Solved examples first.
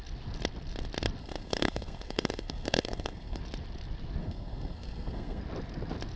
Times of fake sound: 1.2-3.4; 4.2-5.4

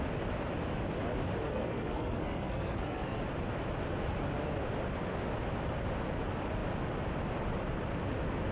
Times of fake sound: 1.5-3.2

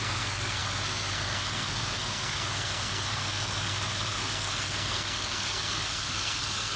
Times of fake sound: 0.0-6.8

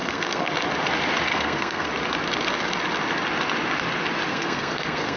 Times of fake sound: 0.0-0.5; 1.3-1.9; 4.3-5.2

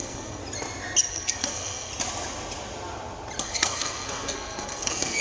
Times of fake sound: 0.0-0.4; 1.1-1.9; 3.4-5.2